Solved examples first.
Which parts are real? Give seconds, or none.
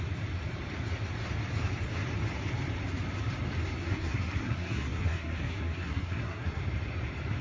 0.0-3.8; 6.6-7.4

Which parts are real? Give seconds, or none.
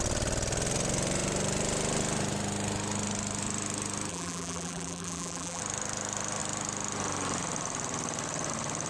0.0-4.1; 5.6-8.9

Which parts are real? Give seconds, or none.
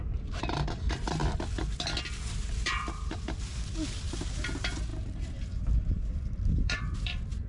1.2-2.3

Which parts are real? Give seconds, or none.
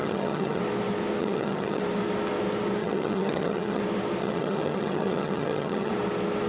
0.6-1.2; 1.8-2.8; 3.8-4.2; 5.9-6.5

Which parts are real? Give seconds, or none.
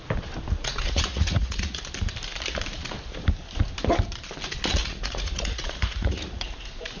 0.0-0.6; 1.8-4.8; 6.5-7.0